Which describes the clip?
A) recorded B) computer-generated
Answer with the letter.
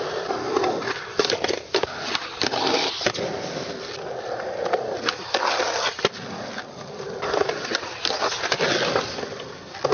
A